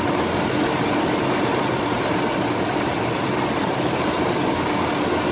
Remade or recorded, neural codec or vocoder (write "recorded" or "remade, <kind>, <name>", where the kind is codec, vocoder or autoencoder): recorded